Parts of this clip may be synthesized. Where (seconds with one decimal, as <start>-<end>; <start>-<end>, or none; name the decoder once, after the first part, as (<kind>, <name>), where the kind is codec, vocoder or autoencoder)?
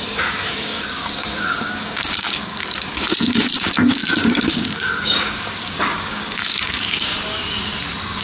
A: 0.0-7.1 (codec, DAC)